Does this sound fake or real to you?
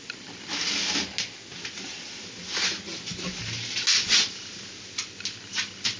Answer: real